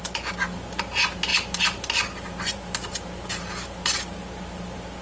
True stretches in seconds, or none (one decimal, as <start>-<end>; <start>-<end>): 0.0-5.0